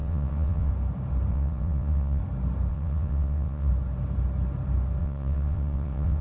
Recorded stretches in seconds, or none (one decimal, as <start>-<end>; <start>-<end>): 0.7-1.3; 2.2-2.7; 3.7-5.0